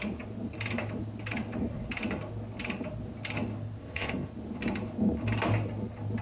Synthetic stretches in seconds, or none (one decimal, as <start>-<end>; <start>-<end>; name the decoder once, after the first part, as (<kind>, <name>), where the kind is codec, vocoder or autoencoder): 3.8-4.3 (codec, ZipCodec)